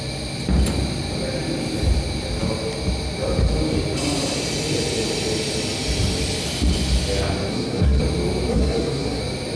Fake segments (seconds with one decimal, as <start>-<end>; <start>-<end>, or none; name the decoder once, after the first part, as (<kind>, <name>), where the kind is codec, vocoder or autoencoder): 7.5-8.0 (codec, SNAC); 8.5-9.2